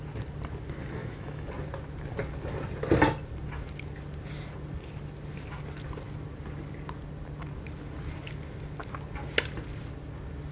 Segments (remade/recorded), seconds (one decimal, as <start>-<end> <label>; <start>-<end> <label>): 0.0-1.0 recorded; 1.0-1.5 remade; 1.5-10.5 recorded